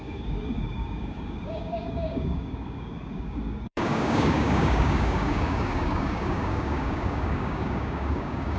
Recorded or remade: remade